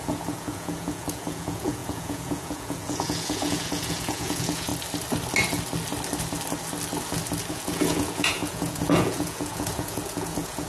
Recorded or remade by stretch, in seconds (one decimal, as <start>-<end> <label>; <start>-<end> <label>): 0.0-4.7 remade; 4.7-7.5 recorded; 7.5-10.7 remade